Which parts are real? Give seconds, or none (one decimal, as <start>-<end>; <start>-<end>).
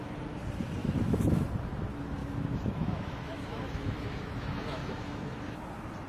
0.0-0.8; 1.5-2.2; 5.6-6.1